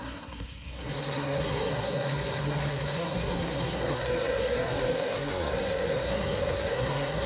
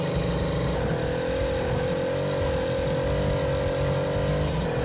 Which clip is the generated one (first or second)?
first